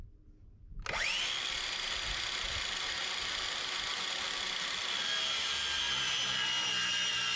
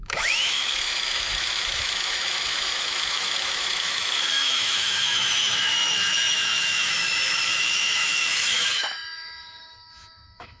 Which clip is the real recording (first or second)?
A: first